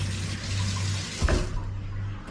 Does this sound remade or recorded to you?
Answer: recorded